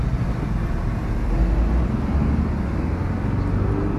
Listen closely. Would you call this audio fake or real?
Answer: real